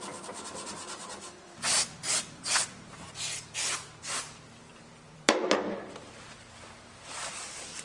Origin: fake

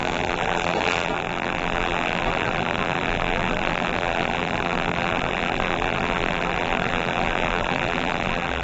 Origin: fake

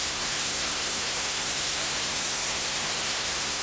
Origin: fake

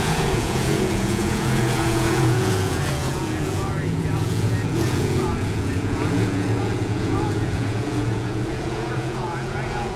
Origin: fake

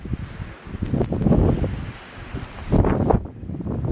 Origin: real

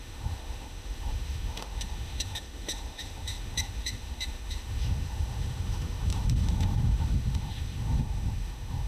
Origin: fake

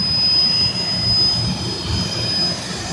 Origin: real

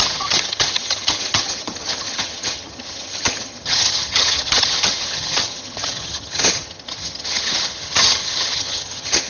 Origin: fake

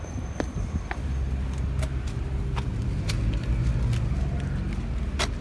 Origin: real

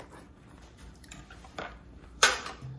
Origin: fake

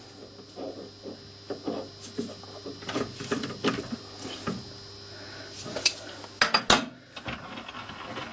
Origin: real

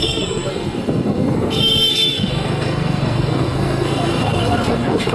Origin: fake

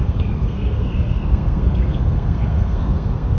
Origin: fake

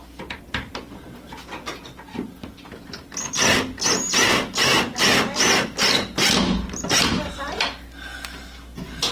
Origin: real